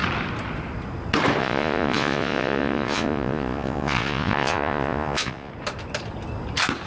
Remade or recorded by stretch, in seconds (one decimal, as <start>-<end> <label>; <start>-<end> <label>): 0.0-1.4 recorded; 1.4-5.5 remade; 5.5-6.9 recorded